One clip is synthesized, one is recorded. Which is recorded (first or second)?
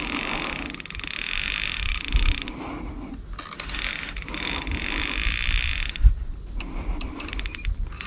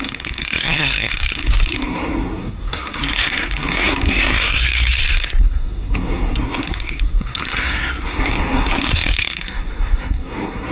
first